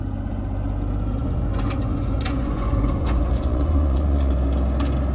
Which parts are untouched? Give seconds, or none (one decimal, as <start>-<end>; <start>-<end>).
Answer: 0.0-1.2; 4.3-5.1